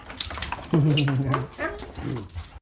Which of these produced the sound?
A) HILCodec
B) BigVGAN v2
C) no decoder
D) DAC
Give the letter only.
C